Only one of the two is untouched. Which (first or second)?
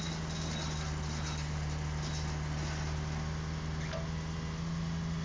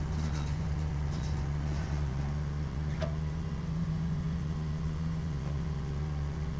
first